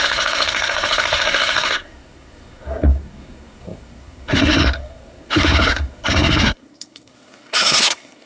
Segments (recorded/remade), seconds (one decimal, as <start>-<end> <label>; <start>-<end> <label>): 0.0-8.3 remade